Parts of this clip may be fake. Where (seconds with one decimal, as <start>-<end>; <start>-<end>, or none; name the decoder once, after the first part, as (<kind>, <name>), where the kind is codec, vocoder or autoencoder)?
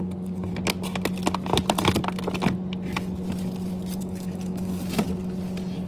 0.0-0.5 (codec, DAC); 4.0-4.8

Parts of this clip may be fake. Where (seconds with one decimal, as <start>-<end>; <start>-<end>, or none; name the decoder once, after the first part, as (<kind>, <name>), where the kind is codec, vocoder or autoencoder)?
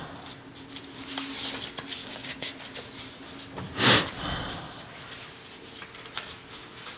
2.0-2.5 (codec, DAC)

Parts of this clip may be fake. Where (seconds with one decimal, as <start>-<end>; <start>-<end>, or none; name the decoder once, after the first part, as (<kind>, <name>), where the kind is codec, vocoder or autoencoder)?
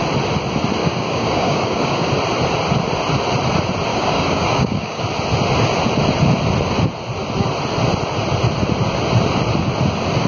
0.8-2.1 (codec, DAC); 3.9-5.0